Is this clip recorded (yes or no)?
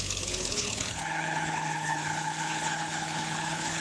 no